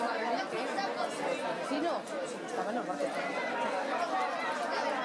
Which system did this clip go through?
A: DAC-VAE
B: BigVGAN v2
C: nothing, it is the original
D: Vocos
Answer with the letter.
C